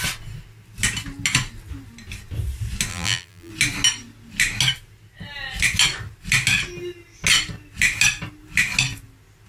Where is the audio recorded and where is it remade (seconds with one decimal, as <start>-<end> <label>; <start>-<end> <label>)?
0.0-2.9 recorded; 2.9-3.5 remade; 3.5-9.5 recorded